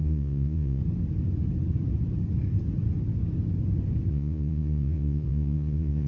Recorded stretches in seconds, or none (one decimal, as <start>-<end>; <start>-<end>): 0.8-4.1